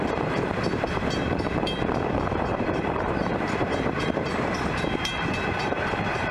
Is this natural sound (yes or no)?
no